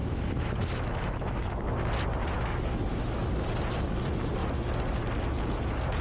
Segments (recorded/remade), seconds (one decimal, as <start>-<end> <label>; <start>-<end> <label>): 0.0-1.5 remade; 1.5-2.2 recorded; 2.2-3.4 remade; 3.4-6.0 recorded